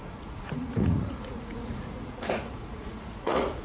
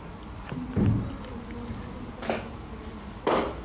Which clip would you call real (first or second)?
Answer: second